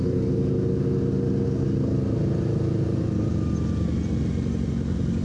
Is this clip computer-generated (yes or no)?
no